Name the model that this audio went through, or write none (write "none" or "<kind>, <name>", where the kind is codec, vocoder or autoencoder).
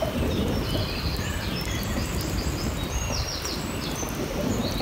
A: vocoder, BigVGAN v2